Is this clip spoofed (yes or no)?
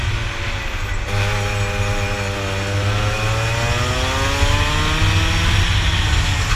no